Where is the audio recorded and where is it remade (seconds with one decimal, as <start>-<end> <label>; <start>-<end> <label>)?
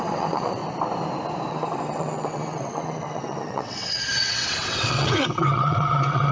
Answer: 0.0-0.6 remade; 0.6-1.5 recorded; 1.5-6.3 remade